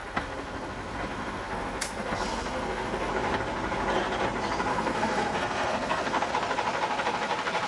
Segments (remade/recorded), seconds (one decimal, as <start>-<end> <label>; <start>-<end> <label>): 0.0-3.1 remade; 3.1-4.7 recorded; 4.7-6.3 remade; 6.3-7.7 recorded